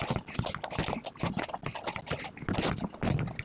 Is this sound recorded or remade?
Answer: recorded